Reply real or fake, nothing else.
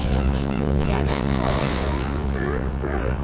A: fake